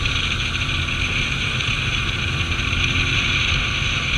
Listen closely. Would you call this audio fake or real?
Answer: real